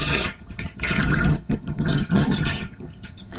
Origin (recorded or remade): remade